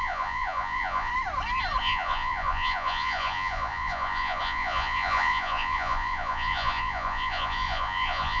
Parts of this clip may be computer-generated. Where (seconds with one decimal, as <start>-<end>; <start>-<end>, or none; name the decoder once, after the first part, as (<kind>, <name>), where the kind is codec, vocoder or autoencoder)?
0.0-1.1 (vocoder, Vocos); 1.8-8.4